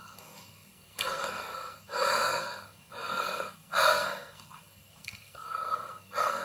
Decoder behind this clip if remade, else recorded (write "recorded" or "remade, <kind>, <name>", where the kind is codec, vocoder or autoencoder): remade, codec, SNAC